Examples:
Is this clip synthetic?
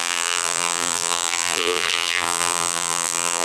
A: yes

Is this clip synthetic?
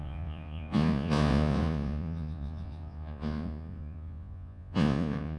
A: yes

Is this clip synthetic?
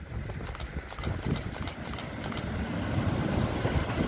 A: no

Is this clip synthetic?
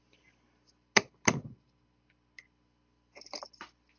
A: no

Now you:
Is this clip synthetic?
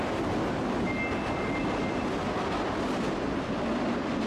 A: no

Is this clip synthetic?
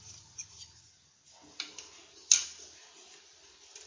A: no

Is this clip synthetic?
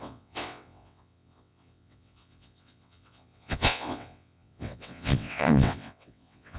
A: yes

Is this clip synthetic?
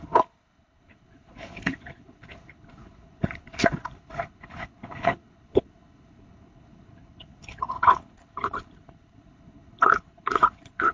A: yes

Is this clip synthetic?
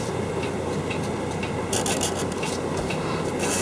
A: no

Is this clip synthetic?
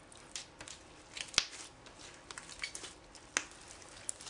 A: no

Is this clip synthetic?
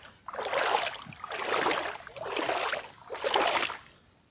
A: no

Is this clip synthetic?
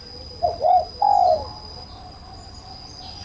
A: no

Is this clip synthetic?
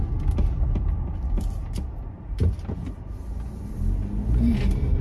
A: no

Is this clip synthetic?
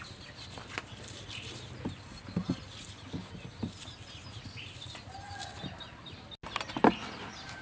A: no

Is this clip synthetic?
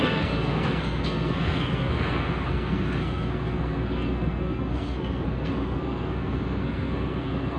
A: yes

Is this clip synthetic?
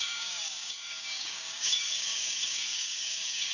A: yes